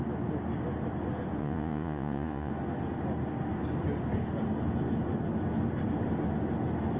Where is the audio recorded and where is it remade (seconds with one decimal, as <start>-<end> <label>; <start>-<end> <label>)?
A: 0.0-1.4 recorded; 1.4-2.5 remade; 2.5-7.0 recorded